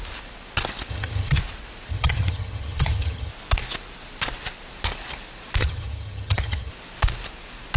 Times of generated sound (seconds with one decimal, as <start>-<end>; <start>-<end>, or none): 0.9-1.4; 1.9-3.3; 5.6-6.7